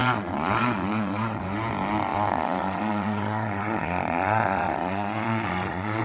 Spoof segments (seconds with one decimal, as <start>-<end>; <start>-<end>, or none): 0.0-1.4; 2.1-6.0